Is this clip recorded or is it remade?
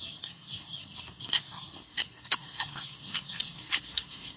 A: remade